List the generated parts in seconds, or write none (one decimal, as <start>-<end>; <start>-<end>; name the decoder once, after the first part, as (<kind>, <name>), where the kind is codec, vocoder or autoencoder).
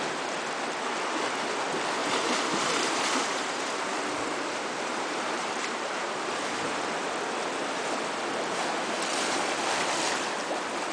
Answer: 2.0-7.0 (vocoder, BigVGAN v2); 9.1-9.6